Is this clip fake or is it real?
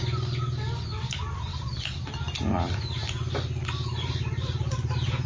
real